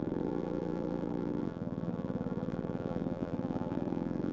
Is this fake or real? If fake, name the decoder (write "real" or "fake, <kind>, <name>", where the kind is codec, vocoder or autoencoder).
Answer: fake, vocoder, BigVGAN v2